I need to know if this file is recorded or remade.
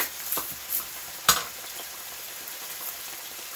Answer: remade